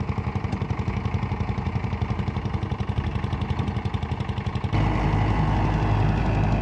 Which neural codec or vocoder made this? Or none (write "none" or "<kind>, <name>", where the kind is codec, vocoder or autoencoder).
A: none